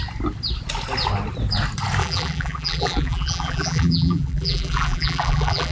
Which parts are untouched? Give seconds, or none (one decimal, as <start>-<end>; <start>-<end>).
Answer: 0.0-2.0